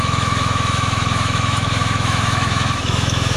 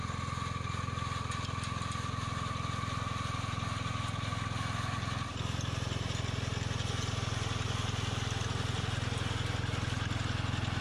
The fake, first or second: first